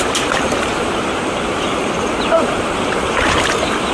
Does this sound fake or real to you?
fake